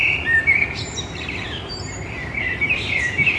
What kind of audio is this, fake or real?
fake